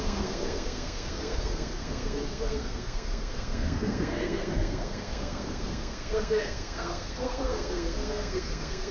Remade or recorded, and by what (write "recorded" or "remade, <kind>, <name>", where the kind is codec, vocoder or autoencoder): remade, codec, SNAC